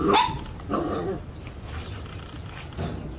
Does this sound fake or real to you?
real